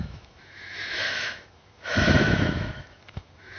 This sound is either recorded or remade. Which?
remade